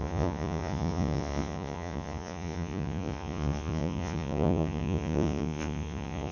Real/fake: fake